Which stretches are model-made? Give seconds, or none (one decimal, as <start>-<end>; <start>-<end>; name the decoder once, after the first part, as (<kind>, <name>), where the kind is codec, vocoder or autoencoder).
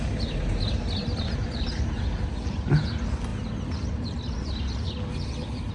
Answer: none